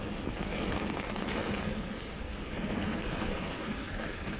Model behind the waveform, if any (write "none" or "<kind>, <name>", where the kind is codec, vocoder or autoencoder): codec, SNAC